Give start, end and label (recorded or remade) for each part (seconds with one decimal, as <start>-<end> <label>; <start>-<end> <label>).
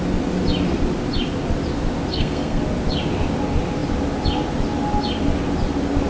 0.0-2.1 recorded; 2.1-2.6 remade; 2.6-6.1 recorded